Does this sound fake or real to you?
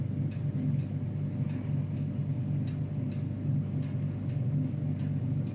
real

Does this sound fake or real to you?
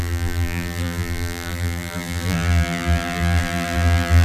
fake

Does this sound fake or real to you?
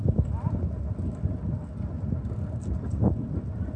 real